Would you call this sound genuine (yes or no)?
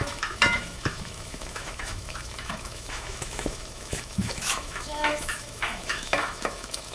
no